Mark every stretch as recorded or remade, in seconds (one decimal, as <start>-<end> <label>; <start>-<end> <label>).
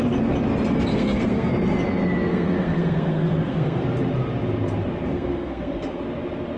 0.0-0.9 recorded; 0.9-1.5 remade; 1.5-2.3 recorded; 2.3-3.8 remade; 3.8-5.1 recorded; 5.1-6.0 remade; 6.0-6.6 recorded